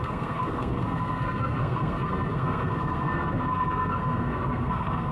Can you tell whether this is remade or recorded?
remade